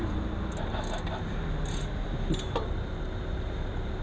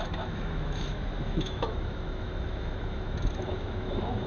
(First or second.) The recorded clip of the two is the first